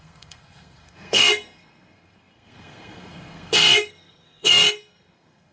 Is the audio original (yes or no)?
no